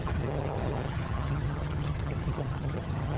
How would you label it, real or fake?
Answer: fake